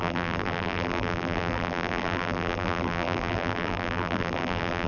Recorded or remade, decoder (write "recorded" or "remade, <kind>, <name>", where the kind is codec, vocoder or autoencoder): remade, vocoder, BigVGAN v2